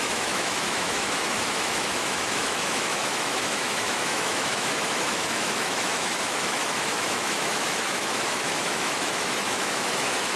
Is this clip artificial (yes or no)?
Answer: yes